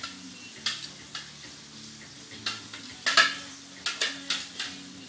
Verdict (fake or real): real